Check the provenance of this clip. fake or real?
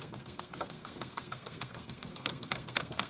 fake